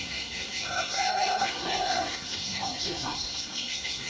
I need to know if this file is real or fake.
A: fake